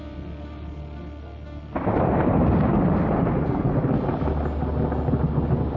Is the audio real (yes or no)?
yes